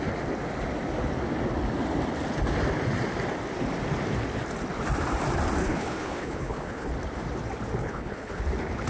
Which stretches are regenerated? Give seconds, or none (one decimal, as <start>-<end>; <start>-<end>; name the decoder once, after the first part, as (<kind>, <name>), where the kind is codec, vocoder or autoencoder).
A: 5.6-6.9 (codec, HILCodec); 7.8-8.4

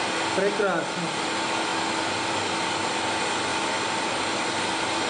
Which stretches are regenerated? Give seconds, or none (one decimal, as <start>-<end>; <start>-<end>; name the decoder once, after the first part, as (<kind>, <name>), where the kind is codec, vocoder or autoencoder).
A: none

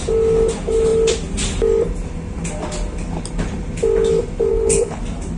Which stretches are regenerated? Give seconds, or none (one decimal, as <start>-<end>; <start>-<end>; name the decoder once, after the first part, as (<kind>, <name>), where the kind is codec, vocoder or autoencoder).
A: 4.5-5.0 (codec, HILCodec)

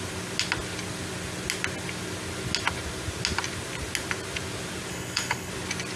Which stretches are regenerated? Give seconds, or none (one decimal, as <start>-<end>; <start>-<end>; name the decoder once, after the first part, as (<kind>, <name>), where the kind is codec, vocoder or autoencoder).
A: 4.9-5.5 (codec, HILCodec)

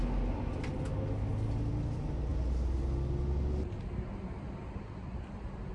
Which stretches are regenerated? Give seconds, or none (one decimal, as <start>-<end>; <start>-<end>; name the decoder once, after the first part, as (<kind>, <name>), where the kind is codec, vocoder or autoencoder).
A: none

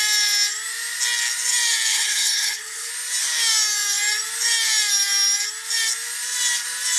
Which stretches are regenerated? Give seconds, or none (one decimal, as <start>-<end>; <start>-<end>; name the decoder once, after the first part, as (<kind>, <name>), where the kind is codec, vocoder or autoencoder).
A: 1.9-2.9 (codec, HILCodec)